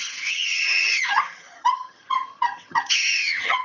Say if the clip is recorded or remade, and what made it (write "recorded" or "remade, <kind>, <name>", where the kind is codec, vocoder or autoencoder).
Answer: remade, vocoder, HiFi-GAN